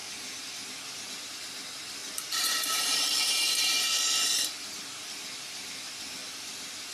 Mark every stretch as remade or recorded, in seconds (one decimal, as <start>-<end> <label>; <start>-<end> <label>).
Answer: 0.0-2.0 recorded; 2.0-3.9 remade; 3.9-6.9 recorded